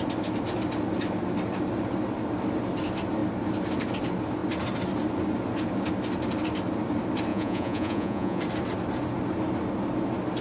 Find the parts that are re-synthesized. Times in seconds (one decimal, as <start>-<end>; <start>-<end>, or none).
7.3-8.4